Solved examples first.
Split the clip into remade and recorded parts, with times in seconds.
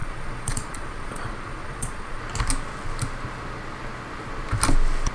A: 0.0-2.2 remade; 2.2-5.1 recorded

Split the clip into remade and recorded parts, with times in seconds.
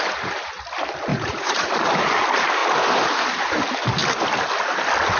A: 0.0-1.1 recorded; 1.1-1.7 remade; 1.7-5.2 recorded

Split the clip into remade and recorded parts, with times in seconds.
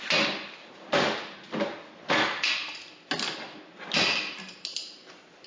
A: 0.0-5.5 recorded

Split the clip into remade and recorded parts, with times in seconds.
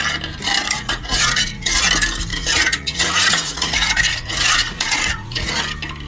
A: 0.0-0.6 recorded; 0.6-1.9 remade; 1.9-2.3 recorded; 2.3-5.5 remade; 5.5-6.1 recorded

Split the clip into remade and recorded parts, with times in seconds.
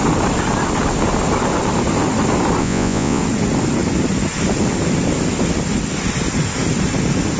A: 0.0-2.6 recorded; 2.6-3.2 remade; 3.2-7.4 recorded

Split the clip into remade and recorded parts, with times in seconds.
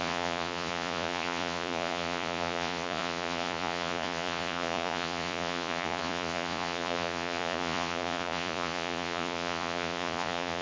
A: 0.0-10.6 remade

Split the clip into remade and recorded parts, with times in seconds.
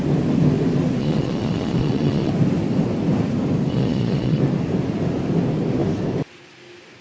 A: 0.0-1.0 recorded; 1.0-2.3 remade; 2.3-3.7 recorded; 3.7-4.4 remade; 4.4-7.0 recorded